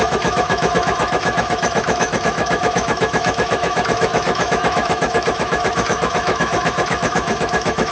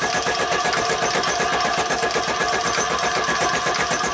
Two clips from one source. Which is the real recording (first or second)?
second